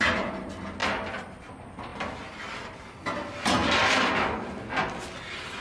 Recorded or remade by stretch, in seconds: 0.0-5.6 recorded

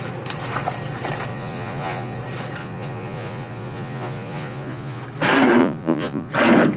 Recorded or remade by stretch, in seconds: 0.0-1.3 recorded; 1.3-2.2 remade; 2.2-2.6 recorded; 2.6-5.0 remade; 5.0-5.6 recorded; 5.6-6.3 remade; 6.3-6.8 recorded

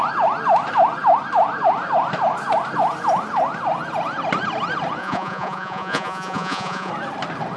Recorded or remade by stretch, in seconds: 0.0-5.0 recorded; 5.0-6.9 remade; 6.9-7.6 recorded

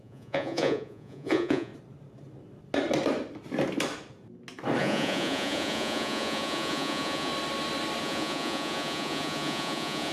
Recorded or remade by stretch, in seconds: 0.0-1.7 remade; 1.7-4.8 recorded; 4.8-7.3 remade; 7.3-8.0 recorded; 8.0-10.1 remade

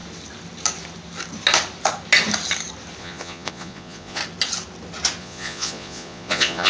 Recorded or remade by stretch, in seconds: 0.0-3.0 recorded; 3.0-4.2 remade; 4.2-5.2 recorded; 5.2-6.7 remade

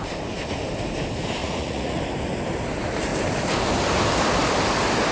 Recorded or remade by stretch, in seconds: 0.0-1.4 recorded; 1.4-2.0 remade; 2.0-5.1 recorded

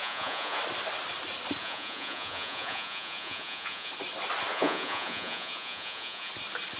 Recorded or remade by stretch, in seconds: 0.0-0.6 remade; 0.6-1.6 recorded; 1.6-3.9 remade; 3.9-4.5 recorded; 4.5-6.3 remade; 6.3-6.8 recorded

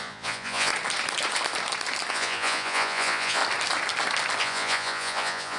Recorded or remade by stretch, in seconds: 0.0-0.7 remade; 0.7-2.1 recorded; 2.1-3.4 remade; 3.4-4.4 recorded; 4.4-5.6 remade